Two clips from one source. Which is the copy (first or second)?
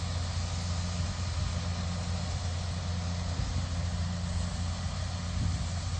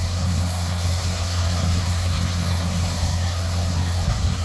second